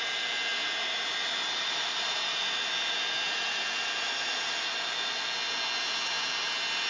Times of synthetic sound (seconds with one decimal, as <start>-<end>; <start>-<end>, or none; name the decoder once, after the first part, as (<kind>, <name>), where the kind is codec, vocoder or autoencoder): 0.5-4.6 (vocoder, BigVGAN v2)